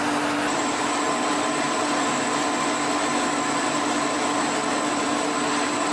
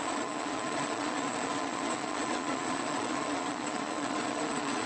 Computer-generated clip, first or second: second